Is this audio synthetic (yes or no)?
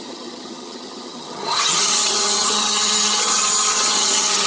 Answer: yes